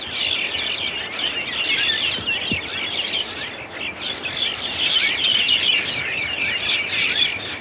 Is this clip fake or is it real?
real